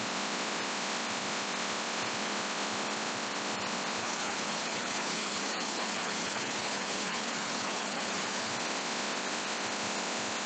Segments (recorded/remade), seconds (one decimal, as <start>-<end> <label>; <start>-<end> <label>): 0.0-4.0 recorded; 4.0-8.5 remade; 8.5-10.5 recorded